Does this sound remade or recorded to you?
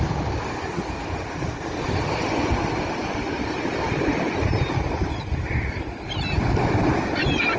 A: recorded